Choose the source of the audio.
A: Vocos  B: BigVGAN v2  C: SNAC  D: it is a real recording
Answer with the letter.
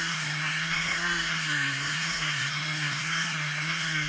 C